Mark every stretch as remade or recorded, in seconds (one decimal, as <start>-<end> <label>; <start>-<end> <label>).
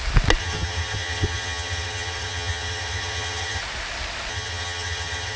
0.0-0.4 recorded; 0.4-3.6 remade; 3.6-4.3 recorded; 4.3-5.4 remade